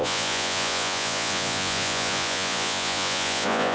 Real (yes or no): no